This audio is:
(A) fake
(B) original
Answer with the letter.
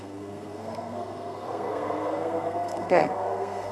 A